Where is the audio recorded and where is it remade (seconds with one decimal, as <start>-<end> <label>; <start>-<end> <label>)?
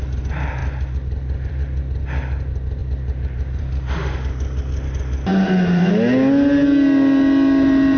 0.0-2.8 recorded; 2.8-3.6 remade; 3.6-8.0 recorded